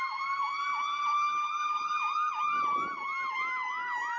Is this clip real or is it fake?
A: real